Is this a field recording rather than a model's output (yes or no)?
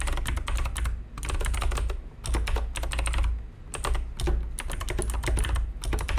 yes